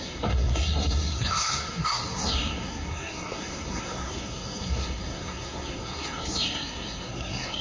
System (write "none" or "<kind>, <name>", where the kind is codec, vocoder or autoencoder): codec, SNAC